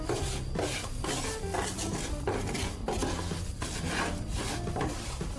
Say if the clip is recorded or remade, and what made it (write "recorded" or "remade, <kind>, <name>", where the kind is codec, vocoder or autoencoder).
recorded